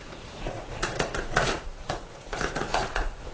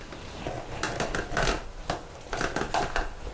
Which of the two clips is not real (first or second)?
first